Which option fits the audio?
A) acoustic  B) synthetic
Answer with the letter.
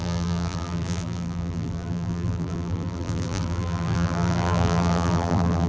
B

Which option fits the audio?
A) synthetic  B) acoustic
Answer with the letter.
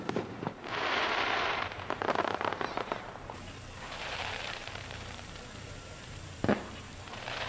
A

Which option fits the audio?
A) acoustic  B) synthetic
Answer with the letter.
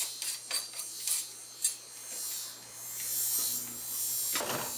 A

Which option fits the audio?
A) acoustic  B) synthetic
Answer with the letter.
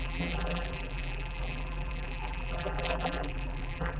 B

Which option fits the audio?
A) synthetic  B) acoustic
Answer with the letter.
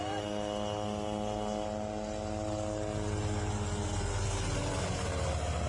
B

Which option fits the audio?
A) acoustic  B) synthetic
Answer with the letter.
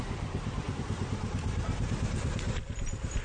B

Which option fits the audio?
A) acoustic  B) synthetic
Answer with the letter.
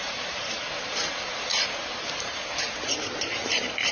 B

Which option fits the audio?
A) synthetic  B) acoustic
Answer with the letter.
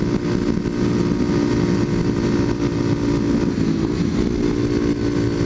B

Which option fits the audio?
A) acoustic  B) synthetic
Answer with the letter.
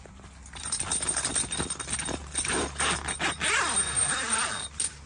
A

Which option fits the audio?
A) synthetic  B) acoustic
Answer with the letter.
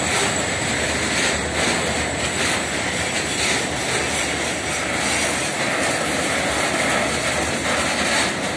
B